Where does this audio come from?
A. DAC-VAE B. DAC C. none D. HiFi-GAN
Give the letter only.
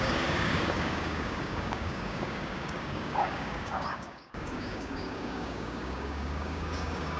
B